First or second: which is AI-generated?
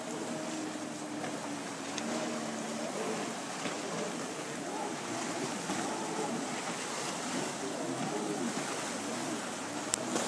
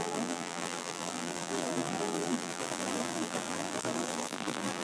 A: second